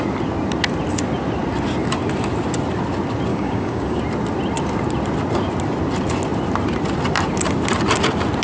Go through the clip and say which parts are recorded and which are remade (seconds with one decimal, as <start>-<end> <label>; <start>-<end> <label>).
0.0-3.3 recorded; 3.3-4.0 remade; 4.0-8.4 recorded